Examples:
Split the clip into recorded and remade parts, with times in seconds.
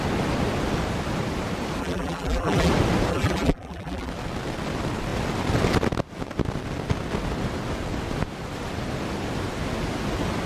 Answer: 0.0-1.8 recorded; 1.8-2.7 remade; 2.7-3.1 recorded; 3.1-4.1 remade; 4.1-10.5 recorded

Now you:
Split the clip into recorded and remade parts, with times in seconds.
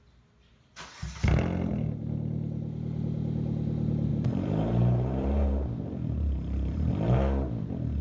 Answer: 0.0-4.1 recorded; 4.1-6.9 remade; 6.9-8.0 recorded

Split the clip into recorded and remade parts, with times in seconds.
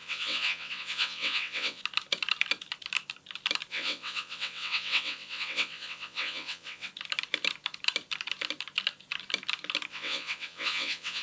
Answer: 0.0-1.8 remade; 1.8-3.7 recorded; 3.7-6.9 remade; 6.9-9.9 recorded; 9.9-11.2 remade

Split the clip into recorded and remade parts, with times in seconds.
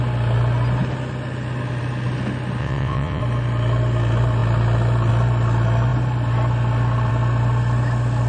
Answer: 0.0-2.6 recorded; 2.6-3.2 remade; 3.2-8.3 recorded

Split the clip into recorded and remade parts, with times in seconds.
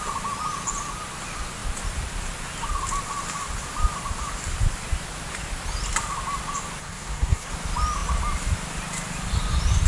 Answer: 0.0-6.8 recorded; 6.8-7.5 remade; 7.5-9.9 recorded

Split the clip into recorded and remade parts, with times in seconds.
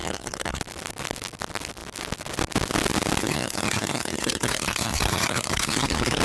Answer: 0.0-0.6 remade; 0.6-3.2 recorded; 3.2-6.2 remade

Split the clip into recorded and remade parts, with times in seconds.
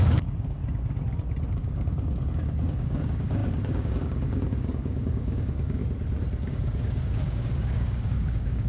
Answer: 0.0-0.6 remade; 0.6-1.5 recorded; 1.5-5.8 remade; 5.8-6.4 recorded; 6.4-8.7 remade